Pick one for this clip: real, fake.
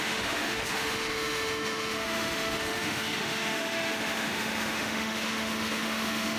fake